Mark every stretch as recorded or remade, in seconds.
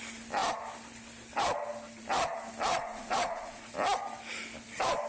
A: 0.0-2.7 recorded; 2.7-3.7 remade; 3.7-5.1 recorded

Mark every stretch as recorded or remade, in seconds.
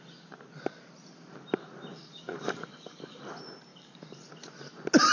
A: 0.0-1.9 recorded; 1.9-3.2 remade; 3.2-3.7 recorded; 3.7-4.3 remade; 4.3-5.1 recorded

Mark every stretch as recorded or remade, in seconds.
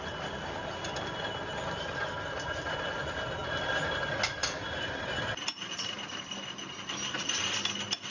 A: 0.0-8.1 recorded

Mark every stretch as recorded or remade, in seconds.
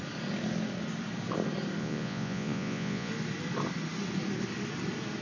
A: 0.0-1.8 recorded; 1.8-3.1 remade; 3.1-5.2 recorded